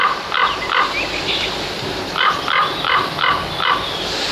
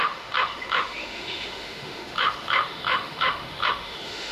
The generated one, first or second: second